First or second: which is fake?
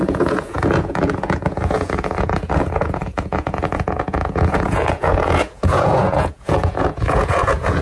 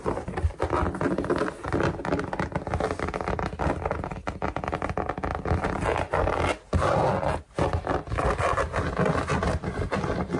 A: first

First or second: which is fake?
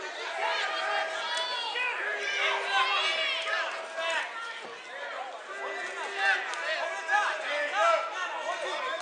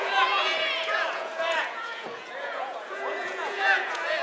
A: second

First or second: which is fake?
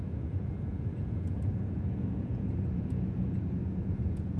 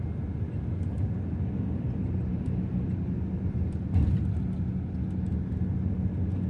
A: first